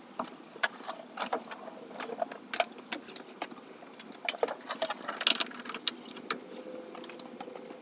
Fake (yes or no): no